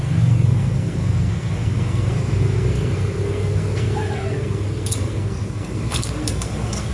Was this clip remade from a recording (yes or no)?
yes